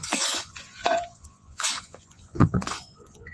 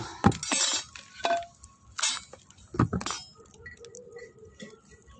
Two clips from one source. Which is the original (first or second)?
second